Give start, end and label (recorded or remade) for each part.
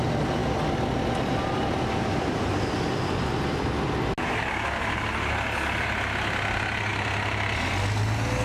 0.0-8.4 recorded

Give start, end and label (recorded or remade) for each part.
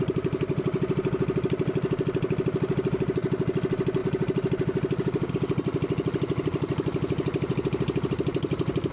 0.0-4.0 recorded; 4.0-5.3 remade; 5.3-8.9 recorded